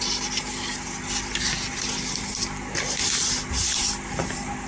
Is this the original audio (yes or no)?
yes